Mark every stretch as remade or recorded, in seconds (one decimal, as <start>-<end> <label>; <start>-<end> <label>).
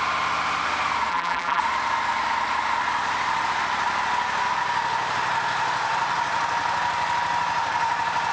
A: 0.0-1.1 recorded; 1.1-1.6 remade; 1.6-8.3 recorded